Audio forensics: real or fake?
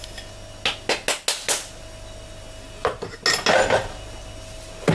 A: real